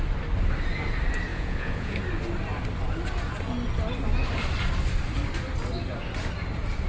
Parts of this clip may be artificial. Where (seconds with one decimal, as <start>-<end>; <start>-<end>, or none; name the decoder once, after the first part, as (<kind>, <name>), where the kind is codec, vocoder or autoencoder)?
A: 1.3-1.9 (vocoder, Vocos)

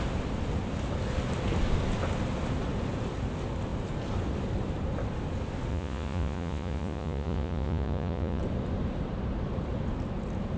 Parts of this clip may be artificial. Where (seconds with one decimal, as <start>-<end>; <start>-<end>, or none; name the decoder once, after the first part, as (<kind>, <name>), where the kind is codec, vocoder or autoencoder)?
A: 5.7-8.4 (vocoder, Vocos)

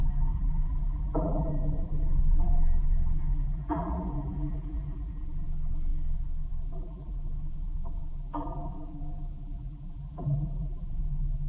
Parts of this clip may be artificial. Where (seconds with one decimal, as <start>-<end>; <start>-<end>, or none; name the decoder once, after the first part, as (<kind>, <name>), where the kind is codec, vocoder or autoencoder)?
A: 0.0-11.5 (vocoder, BigVGAN v2)